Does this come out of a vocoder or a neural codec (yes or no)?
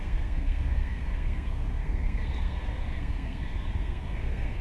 yes